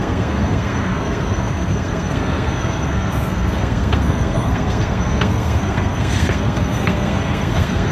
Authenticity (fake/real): fake